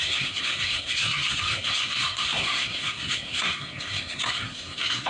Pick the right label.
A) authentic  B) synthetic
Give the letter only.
B